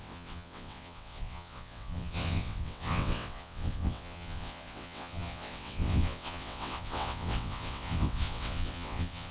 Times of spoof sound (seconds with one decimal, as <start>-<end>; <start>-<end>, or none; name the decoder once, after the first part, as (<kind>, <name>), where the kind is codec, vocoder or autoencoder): 0.0-9.3 (vocoder, WaveNeXt)